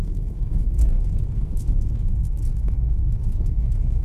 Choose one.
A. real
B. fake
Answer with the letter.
B